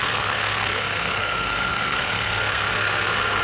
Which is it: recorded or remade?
remade